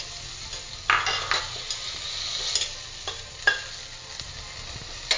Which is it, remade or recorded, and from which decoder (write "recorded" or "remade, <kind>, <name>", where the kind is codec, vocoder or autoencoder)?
recorded